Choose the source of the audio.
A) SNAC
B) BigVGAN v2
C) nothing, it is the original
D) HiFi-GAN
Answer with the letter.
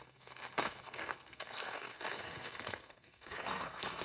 A